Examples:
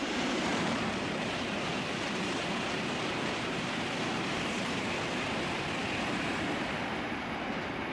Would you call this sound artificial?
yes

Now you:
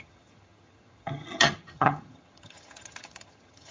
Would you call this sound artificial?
yes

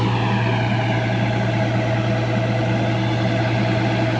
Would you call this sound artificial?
no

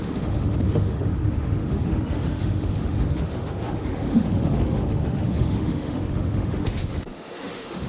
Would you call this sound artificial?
yes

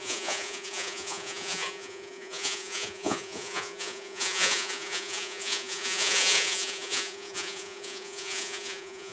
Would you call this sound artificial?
yes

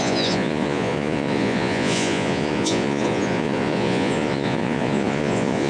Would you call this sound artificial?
yes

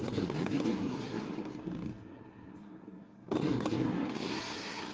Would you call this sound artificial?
yes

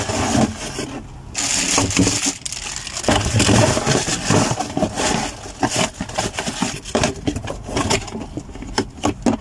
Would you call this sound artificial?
no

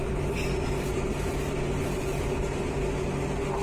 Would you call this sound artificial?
no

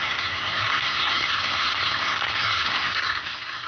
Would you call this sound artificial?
yes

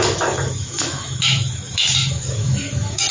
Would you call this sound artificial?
yes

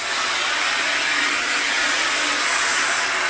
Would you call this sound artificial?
no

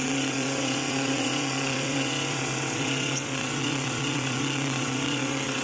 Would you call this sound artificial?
yes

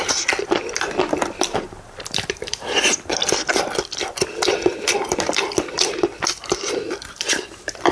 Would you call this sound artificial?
yes